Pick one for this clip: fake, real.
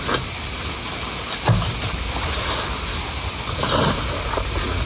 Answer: real